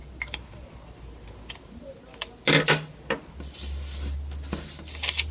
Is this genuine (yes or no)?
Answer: yes